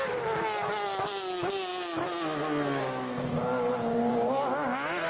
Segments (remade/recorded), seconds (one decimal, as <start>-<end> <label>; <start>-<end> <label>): 0.0-5.1 recorded